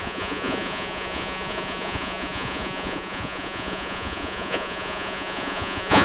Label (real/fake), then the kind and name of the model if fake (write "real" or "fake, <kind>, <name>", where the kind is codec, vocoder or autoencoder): fake, vocoder, Vocos